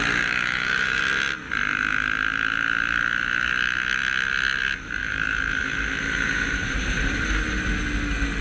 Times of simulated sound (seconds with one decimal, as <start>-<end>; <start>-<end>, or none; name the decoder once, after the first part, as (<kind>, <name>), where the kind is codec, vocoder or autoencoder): 0.4-1.0 (vocoder, BigVGAN v2); 5.0-7.0